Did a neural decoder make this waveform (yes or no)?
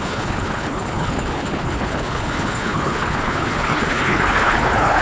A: yes